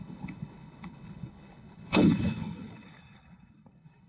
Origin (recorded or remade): remade